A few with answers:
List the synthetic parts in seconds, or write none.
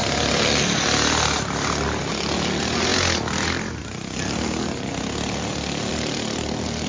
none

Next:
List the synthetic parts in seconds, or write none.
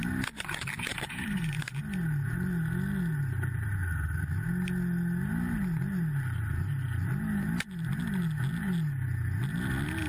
0.9-1.8 (vocoder, BigVGAN v2)